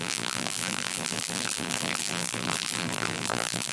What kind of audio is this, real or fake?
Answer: fake